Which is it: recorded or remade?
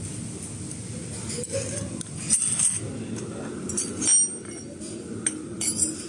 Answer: recorded